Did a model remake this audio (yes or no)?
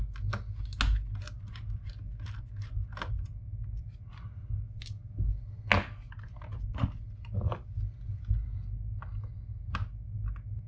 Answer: no